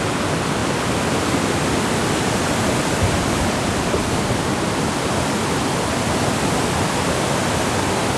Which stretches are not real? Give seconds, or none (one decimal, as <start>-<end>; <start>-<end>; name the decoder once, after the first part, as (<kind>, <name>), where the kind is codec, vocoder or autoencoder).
none

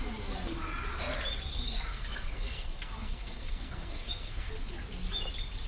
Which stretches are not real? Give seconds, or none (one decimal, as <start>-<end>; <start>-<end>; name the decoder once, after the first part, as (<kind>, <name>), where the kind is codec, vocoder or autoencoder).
1.5-4.5 (codec, SNAC)

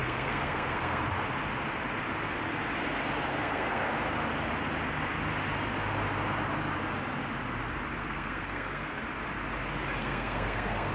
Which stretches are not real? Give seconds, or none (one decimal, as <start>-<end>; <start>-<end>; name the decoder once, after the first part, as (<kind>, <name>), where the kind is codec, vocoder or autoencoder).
0.0-1.0 (codec, SNAC); 3.3-3.9; 8.0-9.0; 10.0-10.9

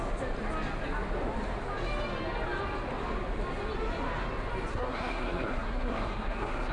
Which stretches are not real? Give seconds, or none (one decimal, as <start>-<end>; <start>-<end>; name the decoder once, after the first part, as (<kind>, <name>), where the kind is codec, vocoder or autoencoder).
4.7-6.7 (codec, SNAC)

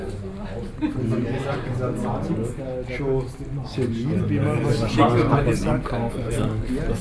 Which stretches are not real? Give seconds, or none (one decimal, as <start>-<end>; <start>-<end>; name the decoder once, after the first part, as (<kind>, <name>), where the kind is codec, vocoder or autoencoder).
6.0-6.6 (codec, SNAC)

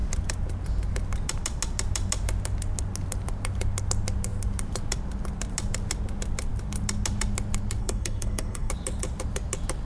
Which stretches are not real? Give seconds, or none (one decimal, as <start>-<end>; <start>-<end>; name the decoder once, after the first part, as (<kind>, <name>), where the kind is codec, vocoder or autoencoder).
7.8-8.7 (codec, SNAC)